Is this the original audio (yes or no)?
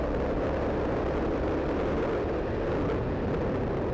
yes